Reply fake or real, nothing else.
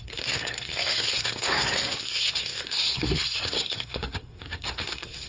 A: fake